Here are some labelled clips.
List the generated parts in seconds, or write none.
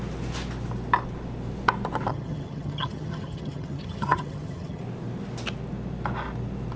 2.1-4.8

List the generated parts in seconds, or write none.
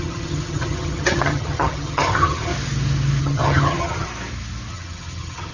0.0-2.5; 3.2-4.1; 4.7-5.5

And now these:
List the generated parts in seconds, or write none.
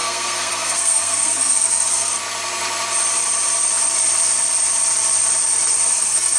0.0-2.1; 5.9-6.4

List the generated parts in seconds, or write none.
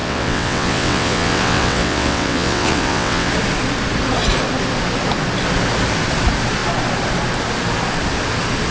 0.0-3.3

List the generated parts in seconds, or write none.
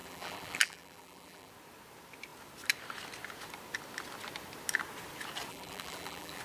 0.0-1.5; 5.5-6.4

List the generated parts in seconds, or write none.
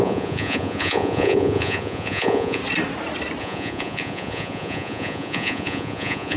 0.0-2.6; 3.4-6.4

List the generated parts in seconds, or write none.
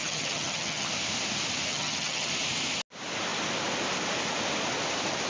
0.0-0.9; 1.7-2.3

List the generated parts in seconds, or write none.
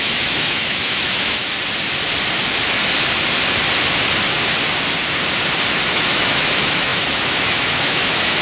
0.0-1.4; 5.9-8.4